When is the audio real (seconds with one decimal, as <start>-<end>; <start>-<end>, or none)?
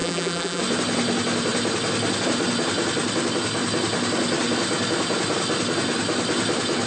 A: 0.6-6.9